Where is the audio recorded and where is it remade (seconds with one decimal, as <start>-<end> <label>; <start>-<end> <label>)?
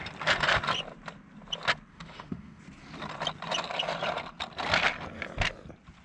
0.0-1.9 recorded; 1.9-2.6 remade; 2.6-6.0 recorded